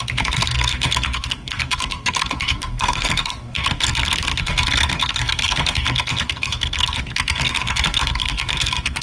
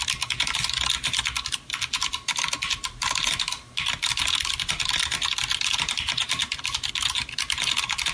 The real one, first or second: second